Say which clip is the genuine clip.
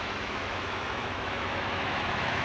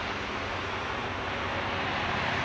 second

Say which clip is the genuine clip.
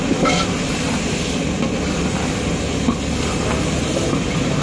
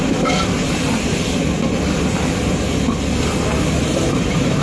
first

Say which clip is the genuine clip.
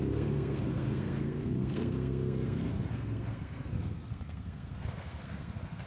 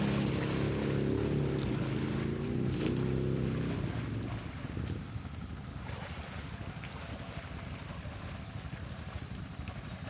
second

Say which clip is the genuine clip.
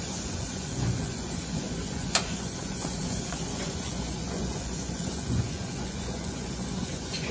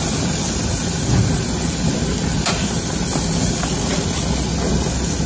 second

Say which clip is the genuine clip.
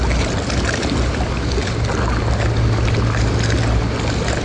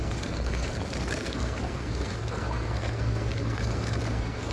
first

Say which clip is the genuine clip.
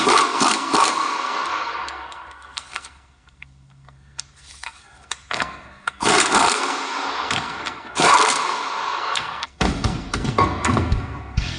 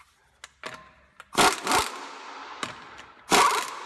second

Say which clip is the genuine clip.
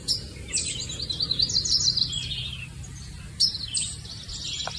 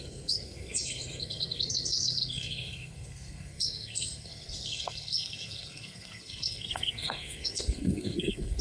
first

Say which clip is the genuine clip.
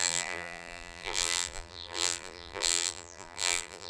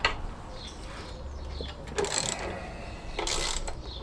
second